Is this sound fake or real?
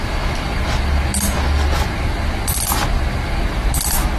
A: real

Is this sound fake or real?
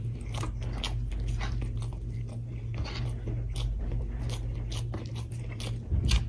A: real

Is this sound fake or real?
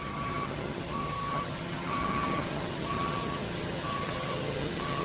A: fake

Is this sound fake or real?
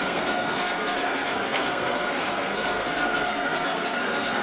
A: fake